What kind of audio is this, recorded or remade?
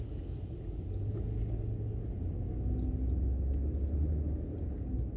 recorded